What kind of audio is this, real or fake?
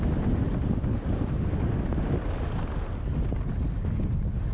real